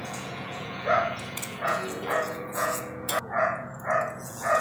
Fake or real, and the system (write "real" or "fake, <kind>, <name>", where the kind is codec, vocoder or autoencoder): fake, vocoder, Vocos